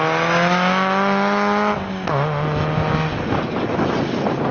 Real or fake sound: real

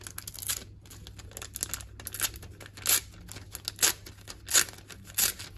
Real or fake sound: real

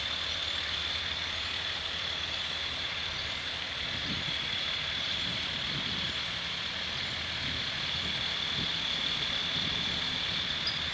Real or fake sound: real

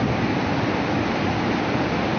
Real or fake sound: real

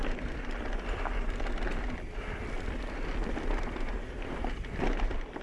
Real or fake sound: real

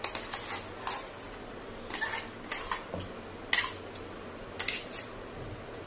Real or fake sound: real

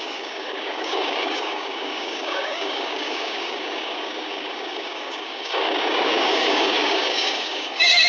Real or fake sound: fake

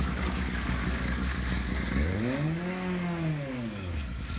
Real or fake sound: fake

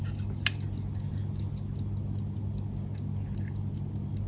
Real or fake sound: real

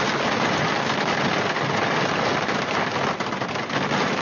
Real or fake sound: real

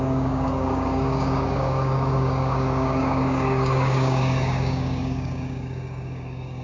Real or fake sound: fake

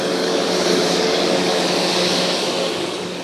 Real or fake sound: fake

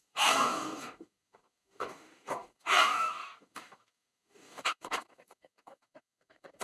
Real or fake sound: fake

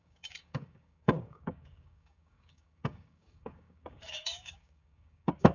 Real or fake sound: fake